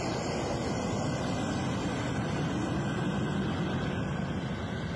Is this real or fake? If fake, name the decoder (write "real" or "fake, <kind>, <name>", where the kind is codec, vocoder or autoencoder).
real